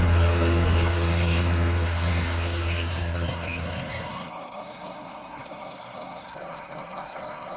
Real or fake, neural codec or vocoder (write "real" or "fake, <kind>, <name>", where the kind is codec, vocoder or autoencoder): fake, codec, SNAC